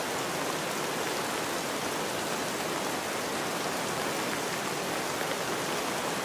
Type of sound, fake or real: real